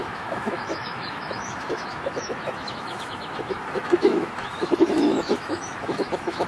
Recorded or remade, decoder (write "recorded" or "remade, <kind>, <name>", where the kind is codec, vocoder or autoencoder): remade, autoencoder, DAC-VAE